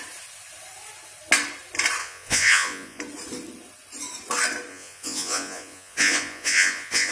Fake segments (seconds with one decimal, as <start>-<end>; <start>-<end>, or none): 2.0-3.0; 4.7-7.1